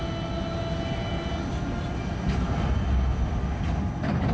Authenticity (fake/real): real